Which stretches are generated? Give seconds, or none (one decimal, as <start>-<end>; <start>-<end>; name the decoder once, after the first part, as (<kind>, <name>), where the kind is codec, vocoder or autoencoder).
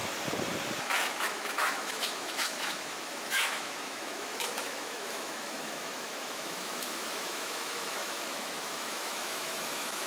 0.8-10.1 (autoencoder, DAC-VAE)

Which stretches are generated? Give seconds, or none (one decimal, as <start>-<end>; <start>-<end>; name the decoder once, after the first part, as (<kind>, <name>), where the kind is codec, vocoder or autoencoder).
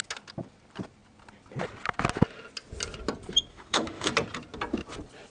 3.5-4.1 (autoencoder, DAC-VAE)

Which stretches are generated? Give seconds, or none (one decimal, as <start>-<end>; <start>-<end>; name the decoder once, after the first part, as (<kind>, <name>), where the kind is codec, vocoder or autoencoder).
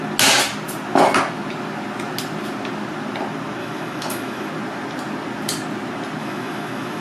3.6-4.5 (autoencoder, DAC-VAE); 6.2-7.0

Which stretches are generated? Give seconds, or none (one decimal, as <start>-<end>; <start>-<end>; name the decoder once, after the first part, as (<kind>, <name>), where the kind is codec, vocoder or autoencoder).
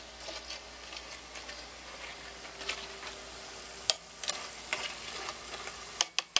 none